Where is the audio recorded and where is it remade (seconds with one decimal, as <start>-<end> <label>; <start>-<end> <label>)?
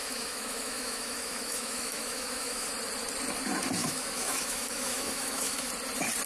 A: 0.0-2.7 remade; 2.7-3.8 recorded; 3.8-5.7 remade; 5.7-6.3 recorded